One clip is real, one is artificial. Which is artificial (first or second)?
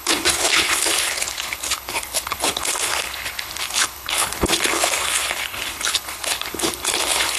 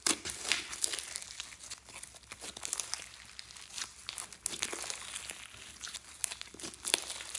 first